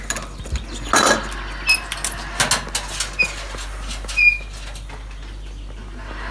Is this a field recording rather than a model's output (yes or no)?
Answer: yes